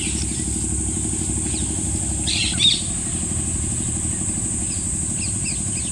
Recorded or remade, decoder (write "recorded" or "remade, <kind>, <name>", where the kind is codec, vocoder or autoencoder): recorded